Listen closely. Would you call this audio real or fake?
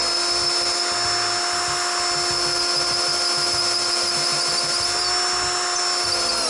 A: real